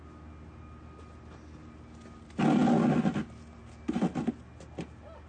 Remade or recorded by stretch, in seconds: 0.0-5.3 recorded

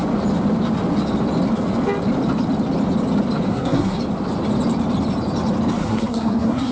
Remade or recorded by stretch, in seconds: 0.0-3.5 recorded; 3.5-4.0 remade; 4.0-5.8 recorded; 5.8-6.7 remade

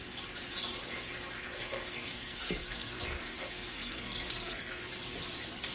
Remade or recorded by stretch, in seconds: 0.0-1.4 recorded; 1.4-4.8 remade; 4.8-5.7 recorded

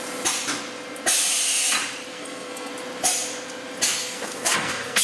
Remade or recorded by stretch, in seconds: 0.0-2.1 recorded; 2.1-2.7 remade; 2.7-4.0 recorded; 4.0-5.0 remade

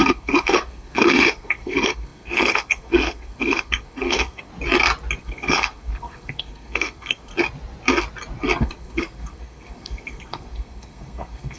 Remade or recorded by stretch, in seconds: 0.0-4.5 remade; 4.5-5.2 recorded; 5.2-7.3 remade; 7.3-8.6 recorded; 8.6-11.6 remade

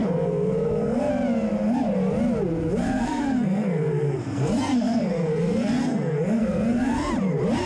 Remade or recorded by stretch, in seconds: 0.0-1.1 remade; 1.1-2.8 recorded; 2.8-7.1 remade; 7.1-7.7 recorded

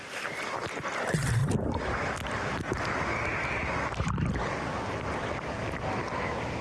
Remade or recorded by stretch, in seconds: 0.0-6.6 recorded